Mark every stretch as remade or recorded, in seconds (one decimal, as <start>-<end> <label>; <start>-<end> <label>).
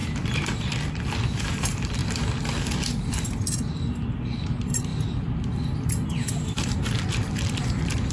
0.0-2.0 remade; 2.0-2.6 recorded; 2.6-8.1 remade